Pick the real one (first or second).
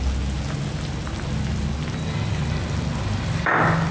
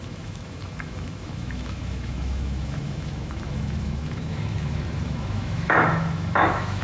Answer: first